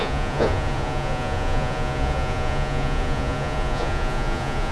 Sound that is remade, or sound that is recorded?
remade